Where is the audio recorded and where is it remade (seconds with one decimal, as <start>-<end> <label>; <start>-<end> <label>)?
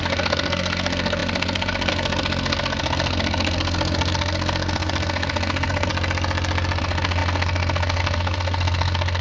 0.0-5.9 remade; 5.9-6.8 recorded; 6.8-9.2 remade